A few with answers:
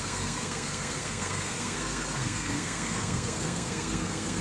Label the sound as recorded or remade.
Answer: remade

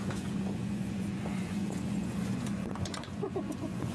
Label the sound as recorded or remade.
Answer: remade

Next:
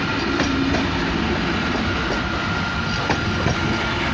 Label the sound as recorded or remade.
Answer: recorded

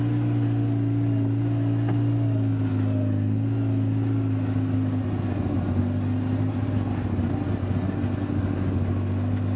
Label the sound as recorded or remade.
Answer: recorded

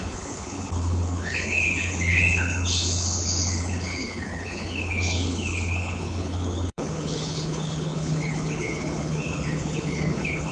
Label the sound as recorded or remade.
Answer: remade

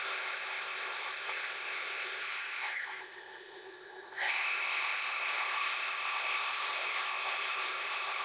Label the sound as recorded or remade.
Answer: remade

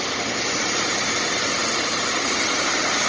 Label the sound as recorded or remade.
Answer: recorded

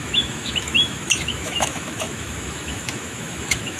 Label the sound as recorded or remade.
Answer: remade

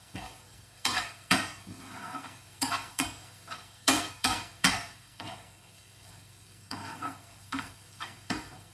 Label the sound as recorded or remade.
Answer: remade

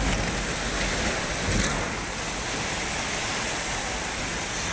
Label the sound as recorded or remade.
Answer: recorded